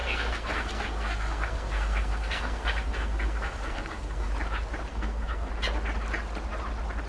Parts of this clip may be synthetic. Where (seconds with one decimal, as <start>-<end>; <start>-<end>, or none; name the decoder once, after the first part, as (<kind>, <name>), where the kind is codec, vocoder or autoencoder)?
0.0-4.3 (codec, SNAC); 4.9-5.5